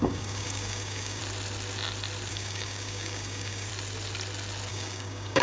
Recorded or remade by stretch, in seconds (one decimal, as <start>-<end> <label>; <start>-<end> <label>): 0.0-1.2 remade; 1.2-2.3 recorded; 2.3-3.7 remade; 3.7-4.7 recorded; 4.7-5.4 remade